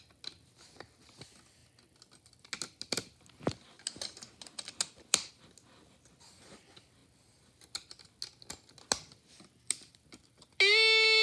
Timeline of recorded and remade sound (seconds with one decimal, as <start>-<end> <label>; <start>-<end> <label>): 0.0-11.2 recorded